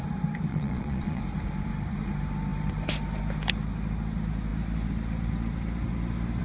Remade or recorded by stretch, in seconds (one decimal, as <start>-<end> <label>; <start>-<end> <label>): 0.0-0.5 recorded; 0.5-1.2 remade; 1.2-6.4 recorded